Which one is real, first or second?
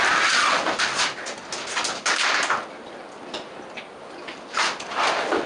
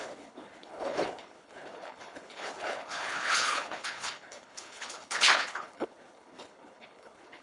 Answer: first